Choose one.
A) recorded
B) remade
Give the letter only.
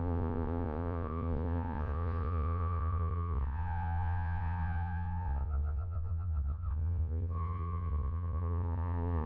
B